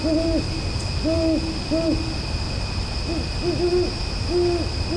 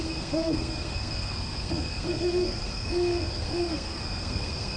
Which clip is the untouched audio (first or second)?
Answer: first